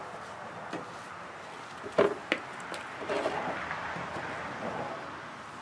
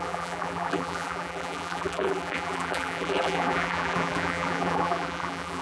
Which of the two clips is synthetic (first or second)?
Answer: second